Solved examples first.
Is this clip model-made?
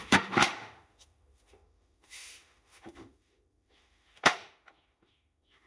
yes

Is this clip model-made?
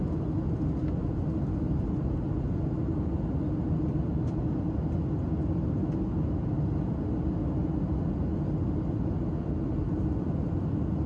no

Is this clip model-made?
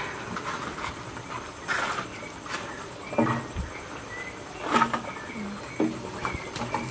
no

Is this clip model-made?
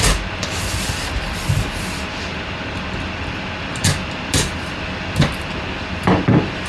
no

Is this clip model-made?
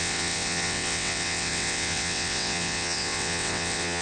yes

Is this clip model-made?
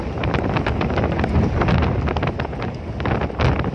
no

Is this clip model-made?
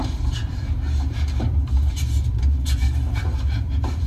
yes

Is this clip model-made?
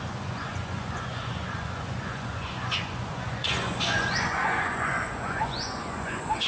yes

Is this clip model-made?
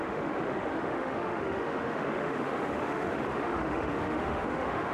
yes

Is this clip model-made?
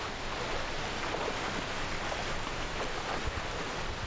no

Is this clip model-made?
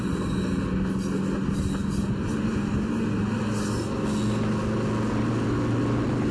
no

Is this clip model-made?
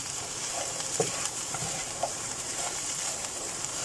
yes